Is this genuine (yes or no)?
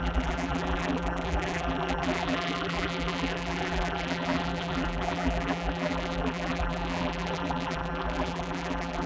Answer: no